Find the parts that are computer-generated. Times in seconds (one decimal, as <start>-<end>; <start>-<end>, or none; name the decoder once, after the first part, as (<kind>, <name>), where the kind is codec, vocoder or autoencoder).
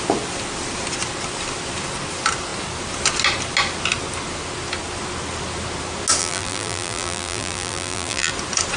6.2-8.3 (vocoder, BigVGAN v2)